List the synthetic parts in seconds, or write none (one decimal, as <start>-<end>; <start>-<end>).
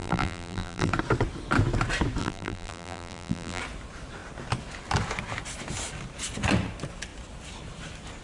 0.0-0.9; 2.2-3.6